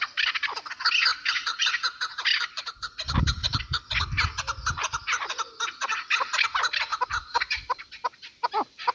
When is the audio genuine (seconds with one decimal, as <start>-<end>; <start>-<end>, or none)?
0.0-1.1; 2.8-6.9; 7.9-8.9